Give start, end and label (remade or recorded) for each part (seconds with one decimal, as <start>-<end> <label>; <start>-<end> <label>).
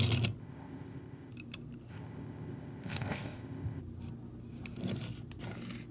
0.0-0.4 recorded; 0.4-1.3 remade; 1.3-1.9 recorded; 1.9-3.8 remade; 3.8-5.9 recorded